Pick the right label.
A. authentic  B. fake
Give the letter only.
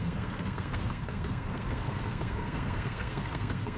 B